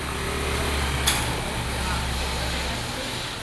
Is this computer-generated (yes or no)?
no